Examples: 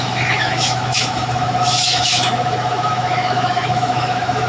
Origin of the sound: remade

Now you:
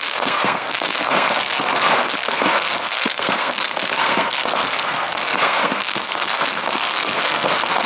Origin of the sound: remade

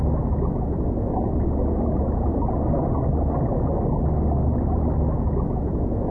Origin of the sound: recorded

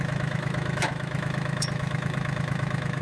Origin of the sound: remade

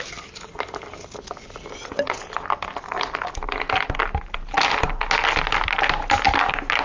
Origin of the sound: recorded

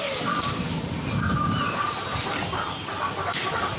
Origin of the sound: recorded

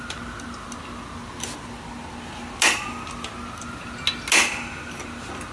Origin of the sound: recorded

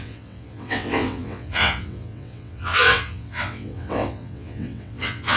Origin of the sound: remade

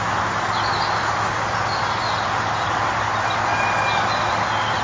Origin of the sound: recorded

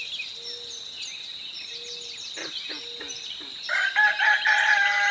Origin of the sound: recorded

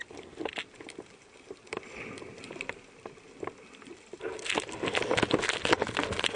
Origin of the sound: recorded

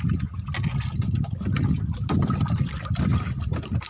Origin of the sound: recorded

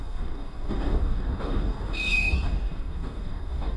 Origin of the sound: remade